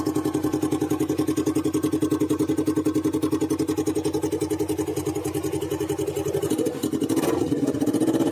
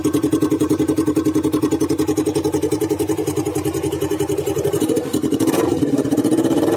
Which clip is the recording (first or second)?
first